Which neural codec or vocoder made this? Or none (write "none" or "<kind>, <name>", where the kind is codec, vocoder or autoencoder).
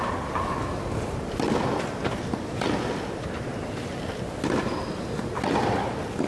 none